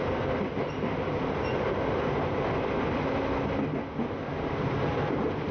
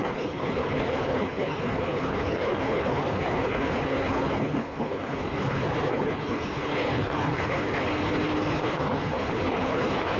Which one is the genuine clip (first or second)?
first